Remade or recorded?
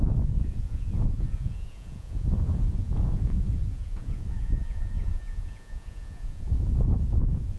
remade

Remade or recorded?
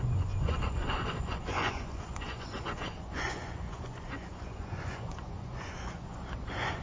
remade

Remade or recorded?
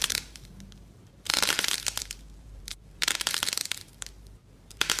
remade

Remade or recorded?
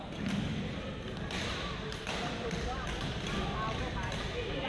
recorded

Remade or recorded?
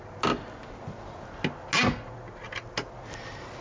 recorded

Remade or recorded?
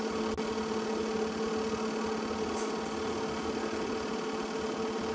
recorded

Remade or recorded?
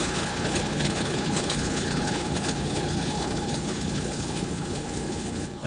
remade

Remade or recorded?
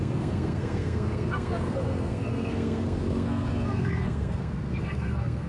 remade